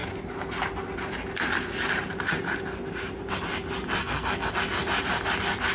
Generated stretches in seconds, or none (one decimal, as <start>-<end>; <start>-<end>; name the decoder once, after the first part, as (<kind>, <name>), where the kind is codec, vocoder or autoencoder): 4.0-4.5 (codec, SNAC)